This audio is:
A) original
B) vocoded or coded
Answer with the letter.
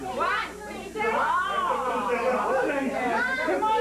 A